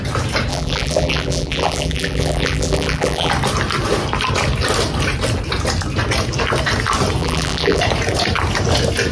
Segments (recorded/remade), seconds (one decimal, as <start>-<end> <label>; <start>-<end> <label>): 0.0-0.5 recorded; 0.5-3.3 remade; 3.3-7.2 recorded; 7.2-7.8 remade; 7.8-9.1 recorded